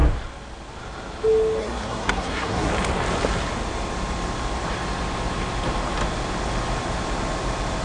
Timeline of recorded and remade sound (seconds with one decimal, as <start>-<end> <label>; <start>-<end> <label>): 0.0-1.6 recorded; 1.6-2.7 remade; 2.7-7.8 recorded